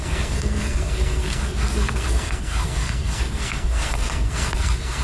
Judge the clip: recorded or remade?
remade